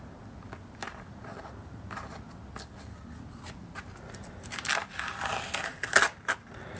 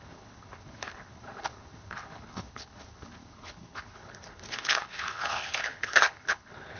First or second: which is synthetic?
second